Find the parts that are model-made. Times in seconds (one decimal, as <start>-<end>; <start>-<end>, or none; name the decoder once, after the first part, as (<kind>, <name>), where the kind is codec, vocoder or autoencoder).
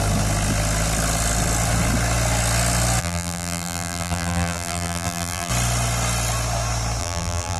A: 3.0-5.5 (vocoder, BigVGAN v2); 7.0-7.6